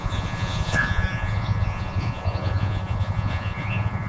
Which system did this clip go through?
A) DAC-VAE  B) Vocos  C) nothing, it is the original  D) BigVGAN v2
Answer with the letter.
B